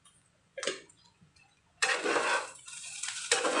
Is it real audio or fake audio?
fake